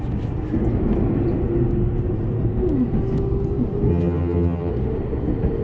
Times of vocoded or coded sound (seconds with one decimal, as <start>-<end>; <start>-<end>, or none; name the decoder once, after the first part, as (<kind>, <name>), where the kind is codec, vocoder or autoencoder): 3.9-4.7 (vocoder, HiFi-GAN)